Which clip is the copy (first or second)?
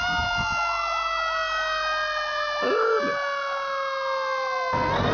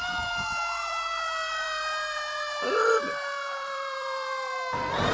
second